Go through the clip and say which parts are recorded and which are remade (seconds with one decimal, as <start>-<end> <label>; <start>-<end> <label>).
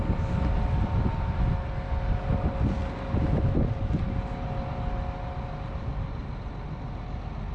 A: 0.0-7.5 recorded